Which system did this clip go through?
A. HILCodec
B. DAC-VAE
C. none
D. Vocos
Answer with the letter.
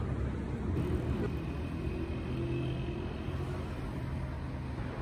C